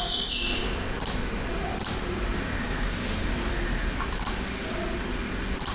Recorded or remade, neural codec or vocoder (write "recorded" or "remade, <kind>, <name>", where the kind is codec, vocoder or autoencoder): recorded